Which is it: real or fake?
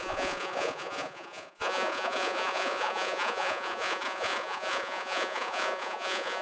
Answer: fake